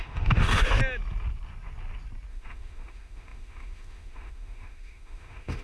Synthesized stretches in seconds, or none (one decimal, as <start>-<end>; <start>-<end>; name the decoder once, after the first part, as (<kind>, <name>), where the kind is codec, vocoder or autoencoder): 0.0-0.8 (autoencoder, DAC-VAE); 2.3-5.6